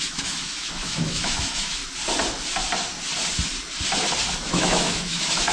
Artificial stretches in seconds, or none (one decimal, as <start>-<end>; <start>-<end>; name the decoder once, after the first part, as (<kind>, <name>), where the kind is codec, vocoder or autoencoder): 0.0-1.8 (autoencoder, DAC-VAE); 4.5-5.5